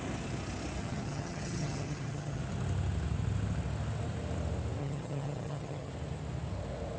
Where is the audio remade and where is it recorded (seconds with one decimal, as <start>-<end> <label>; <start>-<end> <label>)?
0.0-0.8 recorded; 0.8-2.4 remade; 2.4-4.8 recorded; 4.8-5.9 remade; 5.9-7.0 recorded

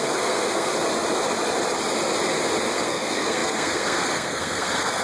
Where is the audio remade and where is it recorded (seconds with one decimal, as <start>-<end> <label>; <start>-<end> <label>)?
0.0-0.7 remade; 0.7-2.7 recorded; 2.7-5.0 remade

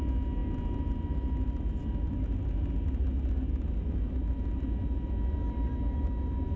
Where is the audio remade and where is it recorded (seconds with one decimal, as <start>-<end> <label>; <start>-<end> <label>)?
0.0-6.6 recorded

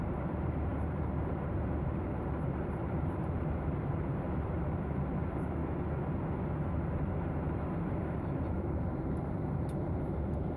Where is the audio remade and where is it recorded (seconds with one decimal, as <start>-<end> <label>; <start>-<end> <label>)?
0.0-5.6 remade; 5.6-6.6 recorded; 6.6-10.6 remade

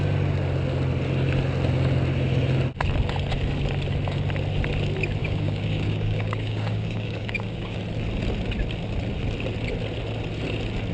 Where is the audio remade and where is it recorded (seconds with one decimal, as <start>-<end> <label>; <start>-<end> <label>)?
0.0-5.2 recorded; 5.2-7.8 remade; 7.8-10.9 recorded

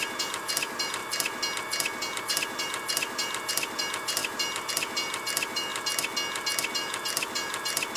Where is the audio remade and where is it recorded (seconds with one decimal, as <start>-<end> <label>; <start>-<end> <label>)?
0.0-1.0 remade; 1.0-2.2 recorded; 2.2-5.7 remade; 5.7-6.7 recorded; 6.7-8.0 remade